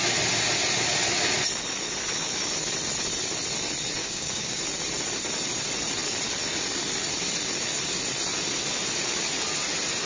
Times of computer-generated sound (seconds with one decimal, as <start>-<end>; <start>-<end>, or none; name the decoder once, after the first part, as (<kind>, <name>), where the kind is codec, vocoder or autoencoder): 4.0-4.6 (codec, DAC)